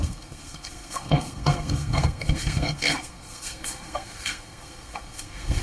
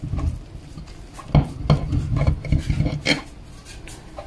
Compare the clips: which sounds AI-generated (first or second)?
first